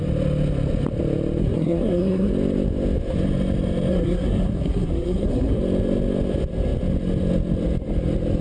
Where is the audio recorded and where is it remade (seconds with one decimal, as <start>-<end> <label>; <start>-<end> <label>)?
0.0-1.4 recorded; 1.4-2.3 remade; 2.3-3.9 recorded; 3.9-5.6 remade; 5.6-8.4 recorded